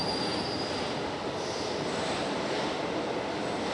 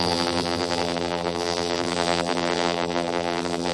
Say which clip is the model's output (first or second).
second